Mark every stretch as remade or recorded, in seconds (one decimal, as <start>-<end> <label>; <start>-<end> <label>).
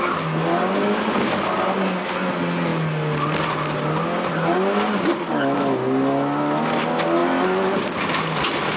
0.0-8.8 recorded